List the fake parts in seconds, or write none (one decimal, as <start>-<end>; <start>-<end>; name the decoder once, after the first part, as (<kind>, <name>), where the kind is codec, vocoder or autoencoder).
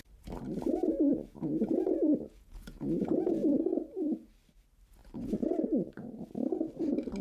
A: 0.9-4.3 (vocoder, Vocos)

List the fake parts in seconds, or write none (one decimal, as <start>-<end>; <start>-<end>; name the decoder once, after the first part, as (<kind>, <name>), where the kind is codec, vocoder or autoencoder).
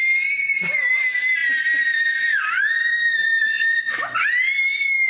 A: none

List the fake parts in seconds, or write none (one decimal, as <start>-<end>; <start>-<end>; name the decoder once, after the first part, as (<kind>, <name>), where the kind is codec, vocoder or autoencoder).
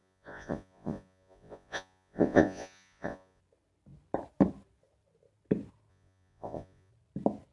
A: 0.0-3.4 (vocoder, Vocos); 5.9-6.9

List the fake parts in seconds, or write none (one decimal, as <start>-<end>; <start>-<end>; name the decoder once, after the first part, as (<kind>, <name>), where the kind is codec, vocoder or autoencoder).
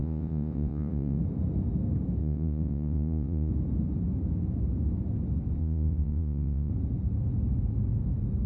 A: 0.0-1.2 (vocoder, Vocos); 2.2-3.5; 5.6-6.7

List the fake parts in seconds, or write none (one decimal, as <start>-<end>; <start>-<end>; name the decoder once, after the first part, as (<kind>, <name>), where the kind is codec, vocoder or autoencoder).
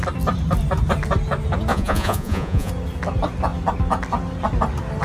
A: 1.7-2.7 (vocoder, Vocos)